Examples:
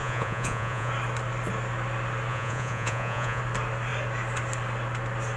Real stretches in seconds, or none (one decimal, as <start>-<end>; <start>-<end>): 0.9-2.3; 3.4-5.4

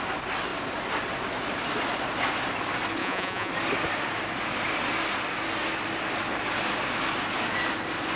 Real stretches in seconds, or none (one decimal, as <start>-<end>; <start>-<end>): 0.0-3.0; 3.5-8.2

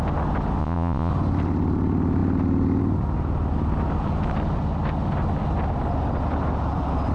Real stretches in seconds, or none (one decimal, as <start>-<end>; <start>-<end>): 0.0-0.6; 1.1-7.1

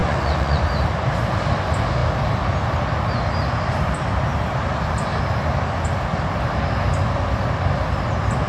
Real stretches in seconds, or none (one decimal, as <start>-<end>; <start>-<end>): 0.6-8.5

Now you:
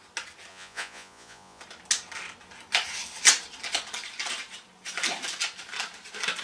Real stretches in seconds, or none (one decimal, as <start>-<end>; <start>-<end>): 0.0-0.5; 1.6-6.4

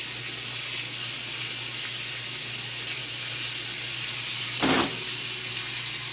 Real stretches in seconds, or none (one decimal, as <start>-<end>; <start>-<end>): 0.0-6.1